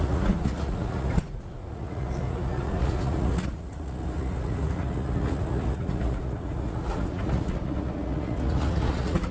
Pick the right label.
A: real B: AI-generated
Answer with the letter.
B